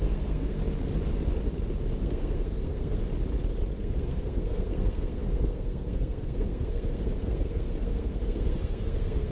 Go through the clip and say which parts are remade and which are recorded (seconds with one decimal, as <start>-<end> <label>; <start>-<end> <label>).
0.0-0.6 remade; 0.6-2.0 recorded; 2.0-3.0 remade; 3.0-3.8 recorded; 3.8-9.3 remade